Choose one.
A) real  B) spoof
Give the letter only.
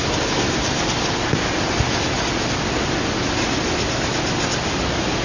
A